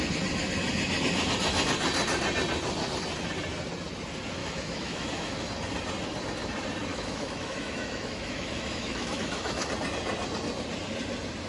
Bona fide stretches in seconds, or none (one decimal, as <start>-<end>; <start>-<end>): 0.0-4.4; 5.5-6.9; 9.7-11.5